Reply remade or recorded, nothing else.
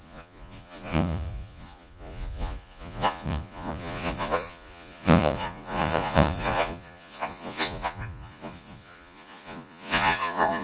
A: remade